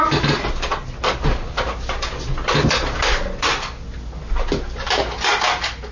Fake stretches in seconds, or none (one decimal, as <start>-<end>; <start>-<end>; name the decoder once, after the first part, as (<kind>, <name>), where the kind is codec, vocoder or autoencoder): none